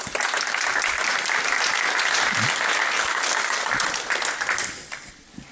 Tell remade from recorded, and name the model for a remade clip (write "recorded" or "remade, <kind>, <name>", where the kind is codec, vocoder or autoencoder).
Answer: recorded